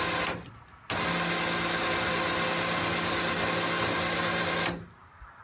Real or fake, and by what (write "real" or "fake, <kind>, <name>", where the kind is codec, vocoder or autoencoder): real